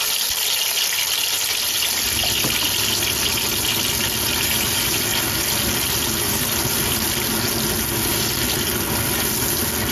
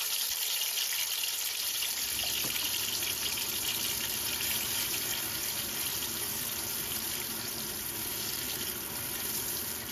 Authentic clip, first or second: first